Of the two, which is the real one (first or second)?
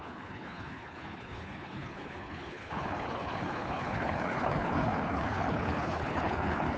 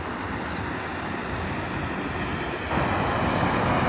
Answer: second